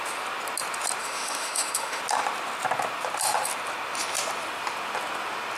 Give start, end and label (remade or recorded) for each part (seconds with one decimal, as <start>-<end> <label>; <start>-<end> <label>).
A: 0.0-1.0 recorded; 1.0-2.0 remade; 2.0-5.6 recorded